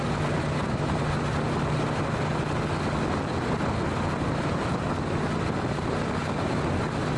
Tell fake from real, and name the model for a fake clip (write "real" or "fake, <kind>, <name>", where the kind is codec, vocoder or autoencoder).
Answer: real